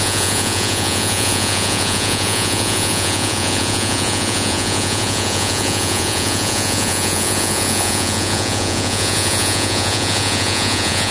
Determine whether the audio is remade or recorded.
remade